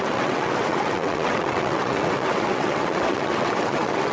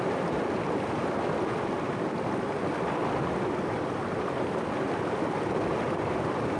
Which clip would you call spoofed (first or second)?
first